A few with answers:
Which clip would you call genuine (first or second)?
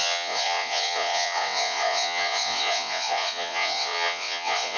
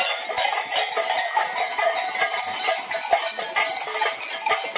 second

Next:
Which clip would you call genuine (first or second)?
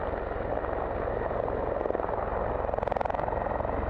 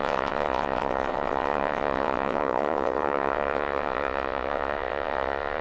first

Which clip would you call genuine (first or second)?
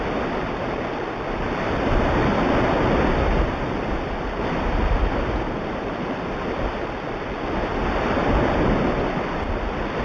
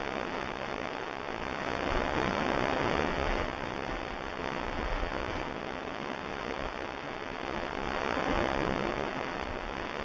first